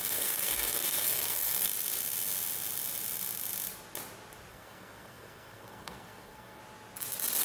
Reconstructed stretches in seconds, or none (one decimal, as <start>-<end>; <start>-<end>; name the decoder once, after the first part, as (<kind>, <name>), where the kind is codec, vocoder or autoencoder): 0.0-1.7 (codec, SNAC); 4.5-6.6